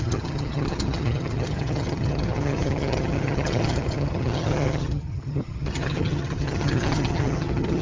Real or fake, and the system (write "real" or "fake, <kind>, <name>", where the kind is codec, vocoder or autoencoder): fake, vocoder, HiFi-GAN